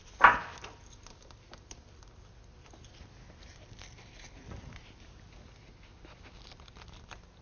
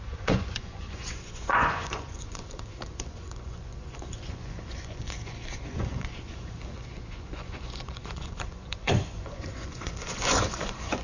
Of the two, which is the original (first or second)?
first